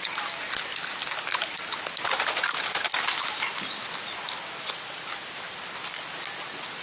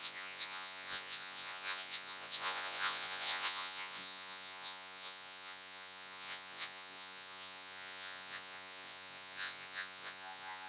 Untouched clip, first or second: first